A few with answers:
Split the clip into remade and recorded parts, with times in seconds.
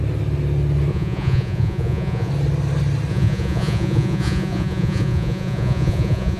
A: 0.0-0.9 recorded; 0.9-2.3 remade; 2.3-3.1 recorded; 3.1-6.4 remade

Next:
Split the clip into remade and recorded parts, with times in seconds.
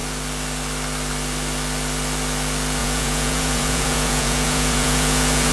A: 0.0-2.8 recorded; 2.8-5.5 remade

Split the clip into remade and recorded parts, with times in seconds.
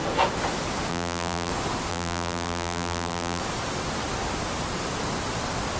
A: 0.0-0.9 recorded; 0.9-1.5 remade; 1.5-1.9 recorded; 1.9-3.4 remade; 3.4-5.8 recorded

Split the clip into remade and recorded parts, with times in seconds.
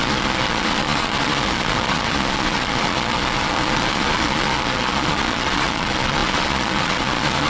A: 0.0-7.5 remade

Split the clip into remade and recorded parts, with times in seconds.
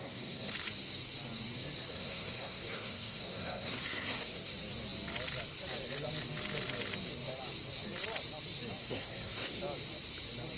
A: 0.0-0.5 remade; 0.5-1.9 recorded; 1.9-4.5 remade; 4.5-8.8 recorded; 8.8-9.6 remade; 9.6-10.6 recorded